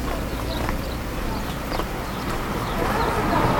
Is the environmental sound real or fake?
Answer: fake